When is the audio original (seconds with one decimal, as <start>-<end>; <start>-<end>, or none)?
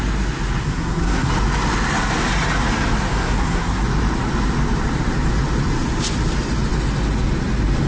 0.0-0.6; 1.3-3.1; 3.8-7.9